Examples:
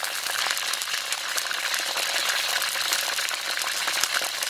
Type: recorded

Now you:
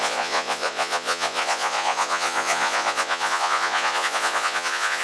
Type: remade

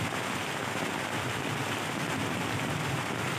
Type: recorded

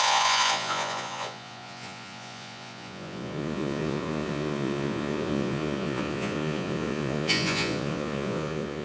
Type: remade